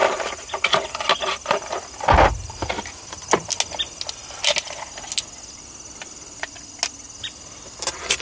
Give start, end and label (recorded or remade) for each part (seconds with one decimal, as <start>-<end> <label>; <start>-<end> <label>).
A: 0.0-8.2 recorded